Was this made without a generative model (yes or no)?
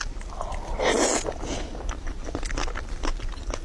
yes